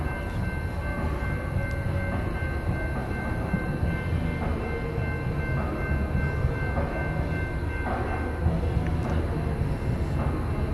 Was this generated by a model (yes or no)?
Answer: no